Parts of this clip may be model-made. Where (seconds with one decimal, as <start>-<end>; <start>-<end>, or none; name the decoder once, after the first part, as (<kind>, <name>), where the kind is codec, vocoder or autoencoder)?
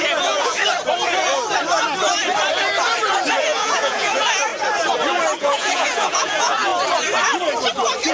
0.0-0.6 (vocoder, Vocos); 3.4-4.5; 5.4-6.7